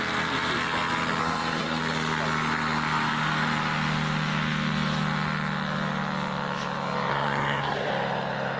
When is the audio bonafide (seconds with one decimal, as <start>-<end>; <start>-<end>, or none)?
0.0-1.2; 1.8-7.1; 7.9-8.6